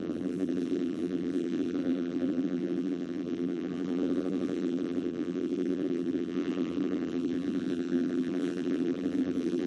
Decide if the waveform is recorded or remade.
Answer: remade